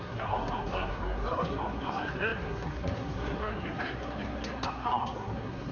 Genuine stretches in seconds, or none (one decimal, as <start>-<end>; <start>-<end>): none